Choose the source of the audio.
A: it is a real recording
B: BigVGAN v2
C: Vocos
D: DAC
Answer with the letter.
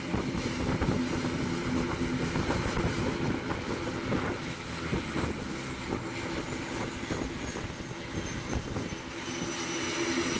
A